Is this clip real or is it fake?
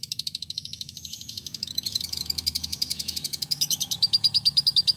fake